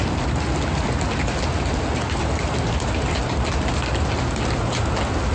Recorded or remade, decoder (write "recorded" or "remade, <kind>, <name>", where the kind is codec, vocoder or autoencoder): recorded